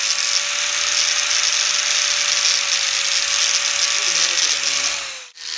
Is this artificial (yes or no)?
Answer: no